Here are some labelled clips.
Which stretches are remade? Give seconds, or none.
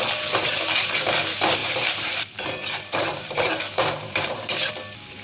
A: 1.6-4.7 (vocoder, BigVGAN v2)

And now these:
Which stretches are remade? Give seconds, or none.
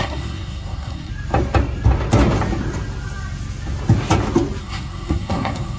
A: 0.0-1.1 (codec, SNAC); 4.6-5.8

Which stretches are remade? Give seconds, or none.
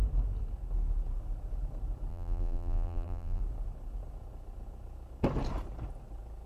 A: 2.1-3.4 (vocoder, BigVGAN v2)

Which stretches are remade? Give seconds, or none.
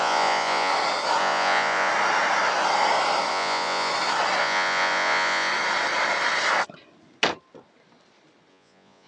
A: 0.0-0.7 (vocoder, Vocos); 1.2-1.9; 3.3-3.9; 4.4-5.5; 8.5-9.1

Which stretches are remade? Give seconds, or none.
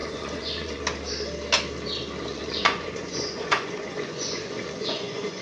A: 0.0-0.8 (vocoder, Vocos); 2.3-5.4